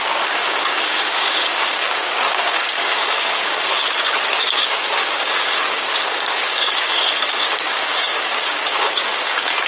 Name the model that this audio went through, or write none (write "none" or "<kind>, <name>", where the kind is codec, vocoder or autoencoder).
codec, DAC